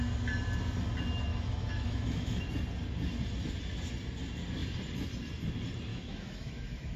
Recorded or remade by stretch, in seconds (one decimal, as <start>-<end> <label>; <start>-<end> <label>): 0.0-1.3 recorded; 1.3-2.5 remade; 2.5-5.9 recorded; 5.9-7.0 remade